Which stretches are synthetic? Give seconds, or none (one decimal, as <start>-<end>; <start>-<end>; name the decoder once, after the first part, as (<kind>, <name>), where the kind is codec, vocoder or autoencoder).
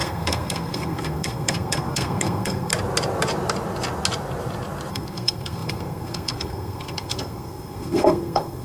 0.0-2.7 (codec, SNAC); 4.9-8.6